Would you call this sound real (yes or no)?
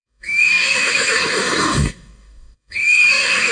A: no